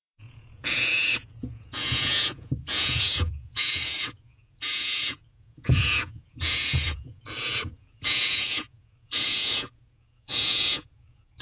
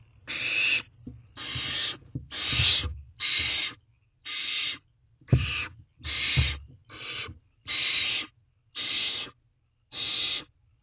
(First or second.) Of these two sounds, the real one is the second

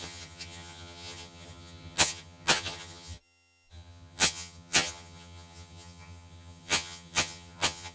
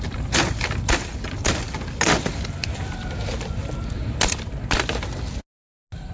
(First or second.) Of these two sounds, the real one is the second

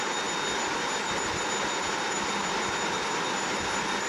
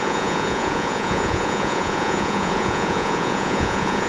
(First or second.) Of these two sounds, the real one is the first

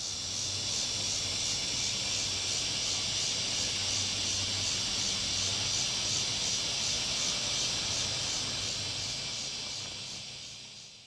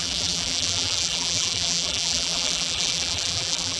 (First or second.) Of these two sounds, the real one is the first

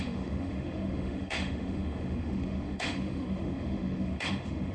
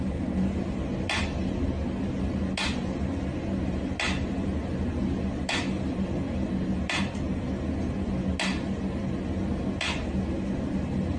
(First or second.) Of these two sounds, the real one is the second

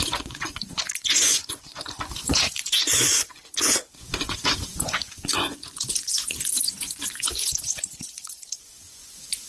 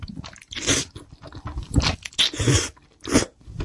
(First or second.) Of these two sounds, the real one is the second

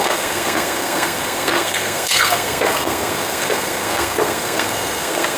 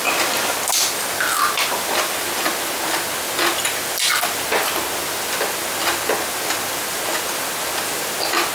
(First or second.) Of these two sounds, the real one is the second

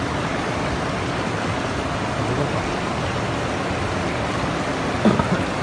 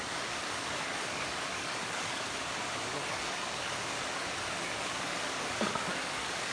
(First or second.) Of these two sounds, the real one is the first